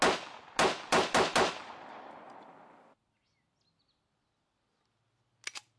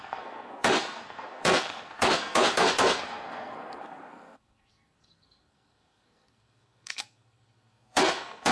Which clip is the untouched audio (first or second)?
first